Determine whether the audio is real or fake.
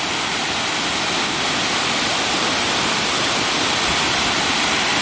real